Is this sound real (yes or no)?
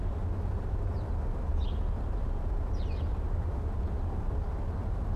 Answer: yes